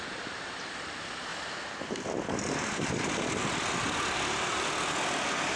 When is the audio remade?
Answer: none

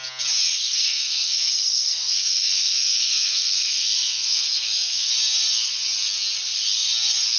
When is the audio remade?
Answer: 0.7-5.1

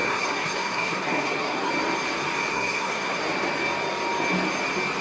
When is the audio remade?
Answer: 0.0-1.7; 2.5-3.2

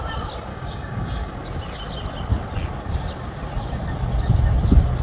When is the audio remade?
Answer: 0.5-1.3

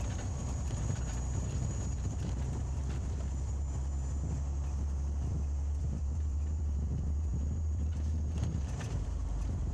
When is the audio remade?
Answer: 0.0-2.8; 5.8-9.7

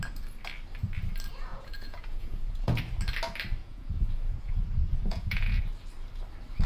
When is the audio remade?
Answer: 1.5-2.8; 3.6-5.6

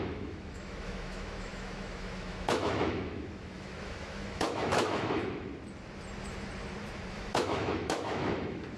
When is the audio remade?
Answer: 0.0-5.5; 7.1-8.8

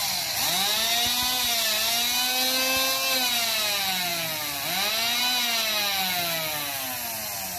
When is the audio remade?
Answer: none